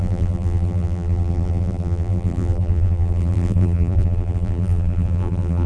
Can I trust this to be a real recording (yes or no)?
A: no